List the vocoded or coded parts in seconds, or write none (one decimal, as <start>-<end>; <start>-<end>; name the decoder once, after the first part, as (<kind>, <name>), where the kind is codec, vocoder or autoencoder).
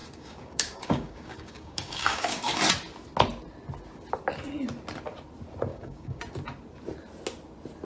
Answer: 0.0-2.6 (codec, DAC); 5.7-6.2